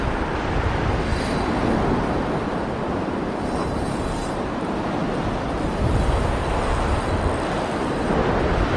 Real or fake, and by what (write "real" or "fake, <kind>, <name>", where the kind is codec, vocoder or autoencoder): real